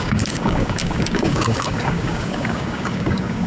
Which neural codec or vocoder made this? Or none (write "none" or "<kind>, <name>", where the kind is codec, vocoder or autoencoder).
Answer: codec, DAC